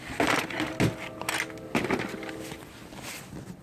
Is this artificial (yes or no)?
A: no